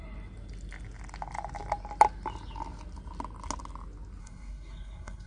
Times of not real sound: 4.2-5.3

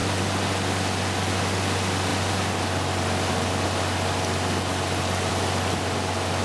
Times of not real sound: none

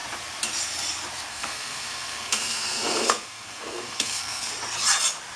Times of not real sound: 1.3-4.5

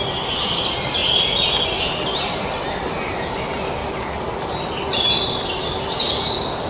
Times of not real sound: none